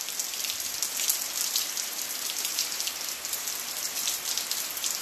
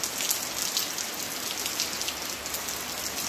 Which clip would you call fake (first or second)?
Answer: first